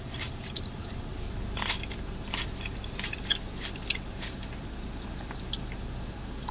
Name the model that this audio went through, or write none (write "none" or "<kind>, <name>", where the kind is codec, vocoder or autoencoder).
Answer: vocoder, BigVGAN v2